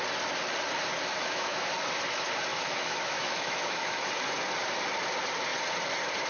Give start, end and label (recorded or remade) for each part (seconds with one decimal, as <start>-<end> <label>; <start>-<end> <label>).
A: 0.0-1.1 recorded; 1.1-1.7 remade; 1.7-2.5 recorded; 2.5-4.1 remade; 4.1-6.3 recorded